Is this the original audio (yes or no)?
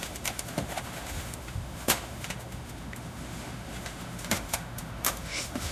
no